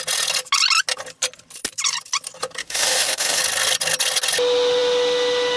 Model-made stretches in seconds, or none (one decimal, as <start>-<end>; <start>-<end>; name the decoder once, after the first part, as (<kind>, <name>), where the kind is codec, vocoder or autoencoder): 2.6-3.4 (autoencoder, DAC-VAE)